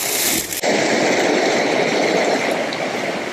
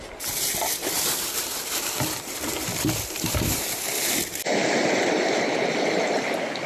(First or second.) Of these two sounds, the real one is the first